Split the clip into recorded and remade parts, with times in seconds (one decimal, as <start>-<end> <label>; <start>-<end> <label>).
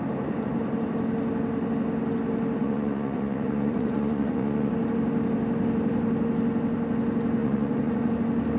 0.0-2.6 recorded; 2.6-4.7 remade; 4.7-7.4 recorded; 7.4-8.1 remade; 8.1-8.6 recorded